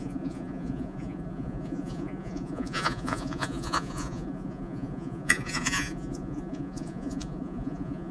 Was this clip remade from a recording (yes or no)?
yes